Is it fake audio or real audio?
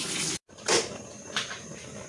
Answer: real